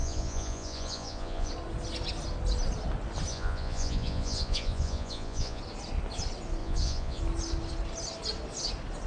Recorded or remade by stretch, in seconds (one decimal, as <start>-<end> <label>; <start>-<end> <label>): 0.0-1.5 remade; 1.5-3.3 recorded; 3.3-5.6 remade; 5.6-6.6 recorded; 6.6-7.2 remade; 7.2-9.1 recorded